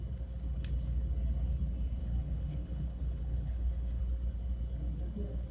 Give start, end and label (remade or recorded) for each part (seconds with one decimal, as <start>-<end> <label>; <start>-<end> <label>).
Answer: 0.0-2.0 recorded; 2.0-4.0 remade; 4.0-5.5 recorded